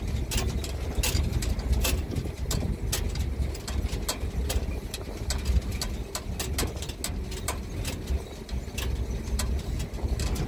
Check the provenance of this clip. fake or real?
real